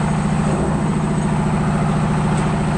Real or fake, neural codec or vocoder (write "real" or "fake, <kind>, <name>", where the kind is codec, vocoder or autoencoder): real